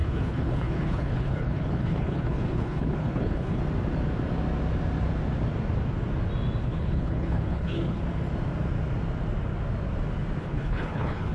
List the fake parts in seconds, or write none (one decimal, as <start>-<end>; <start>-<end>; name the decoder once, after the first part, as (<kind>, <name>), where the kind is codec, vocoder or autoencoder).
0.0-3.6 (codec, HILCodec); 6.6-8.0; 10.4-11.3